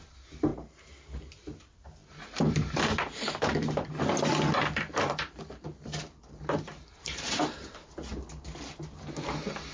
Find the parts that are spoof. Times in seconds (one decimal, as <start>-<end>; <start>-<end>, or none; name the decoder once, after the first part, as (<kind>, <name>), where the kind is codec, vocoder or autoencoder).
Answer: 0.5-1.3 (vocoder, BigVGAN v2); 2.0-7.2